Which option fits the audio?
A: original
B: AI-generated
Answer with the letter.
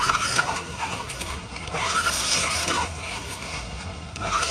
B